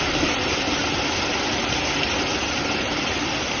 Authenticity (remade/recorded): recorded